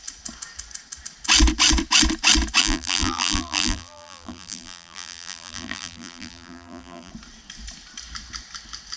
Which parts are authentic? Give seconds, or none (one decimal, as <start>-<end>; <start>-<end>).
0.0-2.6; 7.1-9.0